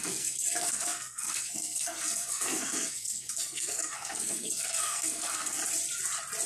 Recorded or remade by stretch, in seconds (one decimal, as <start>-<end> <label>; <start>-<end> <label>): 0.0-5.6 remade; 5.6-6.5 recorded